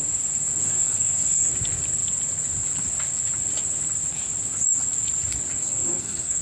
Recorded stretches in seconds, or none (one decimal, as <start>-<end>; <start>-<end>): 0.0-0.6; 1.5-5.5